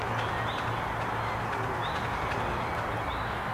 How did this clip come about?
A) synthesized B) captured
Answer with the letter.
B